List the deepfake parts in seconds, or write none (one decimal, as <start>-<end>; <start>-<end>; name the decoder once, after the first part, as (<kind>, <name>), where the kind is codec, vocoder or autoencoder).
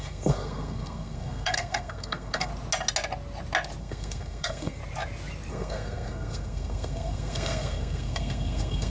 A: 0.0-2.5 (codec, SNAC); 3.8-4.8; 5.5-8.9